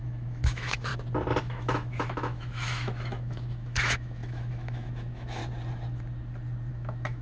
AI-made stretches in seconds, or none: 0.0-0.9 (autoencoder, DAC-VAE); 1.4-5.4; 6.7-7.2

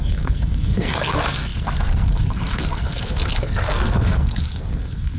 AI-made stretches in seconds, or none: 0.0-5.2 (codec, SNAC)

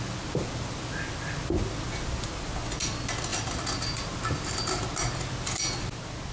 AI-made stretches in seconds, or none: none